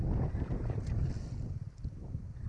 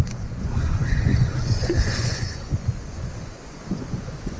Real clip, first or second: first